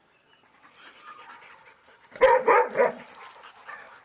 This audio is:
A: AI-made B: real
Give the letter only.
A